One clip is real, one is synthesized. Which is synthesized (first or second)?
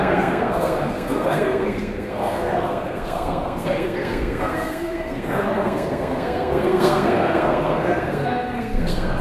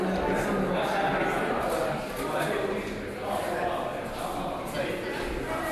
first